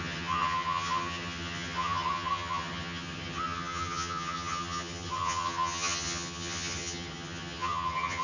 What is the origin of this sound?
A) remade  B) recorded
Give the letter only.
A